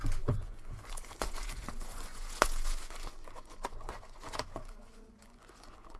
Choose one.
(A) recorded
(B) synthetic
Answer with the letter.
B